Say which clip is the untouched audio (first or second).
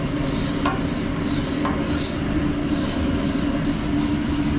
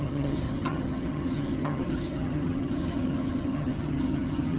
first